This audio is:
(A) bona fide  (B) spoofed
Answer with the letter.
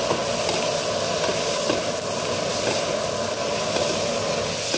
A